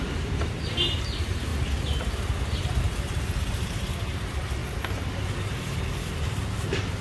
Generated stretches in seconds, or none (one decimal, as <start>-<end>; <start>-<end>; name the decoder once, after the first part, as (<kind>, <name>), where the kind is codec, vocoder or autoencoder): 0.0-1.5 (vocoder, BigVGAN v2); 2.8-4.6; 5.9-7.0